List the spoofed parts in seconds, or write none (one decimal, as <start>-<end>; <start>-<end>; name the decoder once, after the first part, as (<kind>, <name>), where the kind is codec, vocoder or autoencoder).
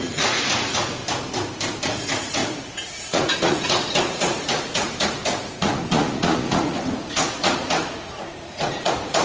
0.0-1.0 (vocoder, Vocos); 1.8-2.4; 3.0-9.2